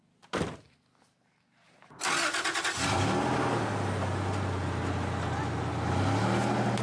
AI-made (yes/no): no